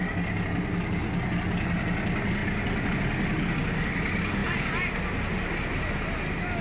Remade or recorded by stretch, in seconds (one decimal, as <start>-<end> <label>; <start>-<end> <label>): 0.0-6.6 recorded